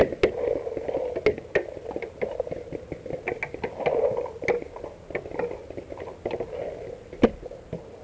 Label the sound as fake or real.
real